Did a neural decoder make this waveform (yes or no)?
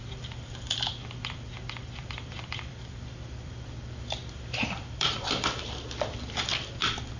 yes